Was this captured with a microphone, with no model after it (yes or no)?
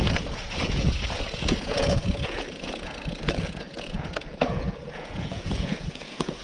no